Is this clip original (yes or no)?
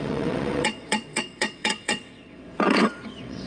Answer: no